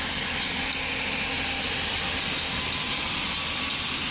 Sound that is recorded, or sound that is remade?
recorded